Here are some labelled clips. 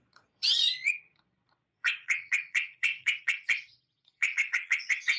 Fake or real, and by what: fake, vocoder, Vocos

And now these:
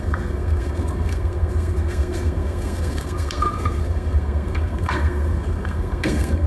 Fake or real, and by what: fake, codec, SNAC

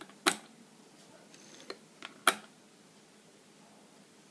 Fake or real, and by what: real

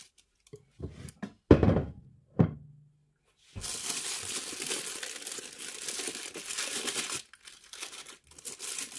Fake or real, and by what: real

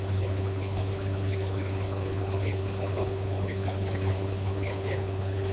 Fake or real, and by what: fake, codec, HILCodec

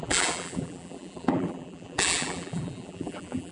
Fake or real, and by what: fake, vocoder, BigVGAN v2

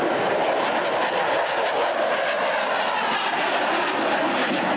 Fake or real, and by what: real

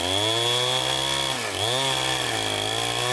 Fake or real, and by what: real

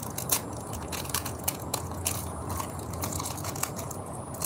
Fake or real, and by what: fake, vocoder, Vocos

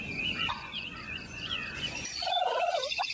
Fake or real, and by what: fake, vocoder, Vocos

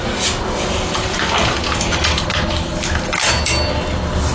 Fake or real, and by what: real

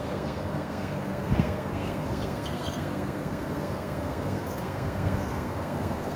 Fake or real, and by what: fake, codec, SNAC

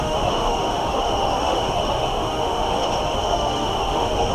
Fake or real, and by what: fake, autoencoder, DAC-VAE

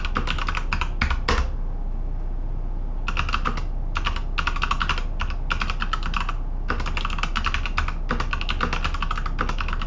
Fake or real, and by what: real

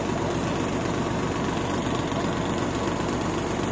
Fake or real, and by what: real